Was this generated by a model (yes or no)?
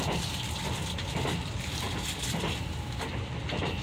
no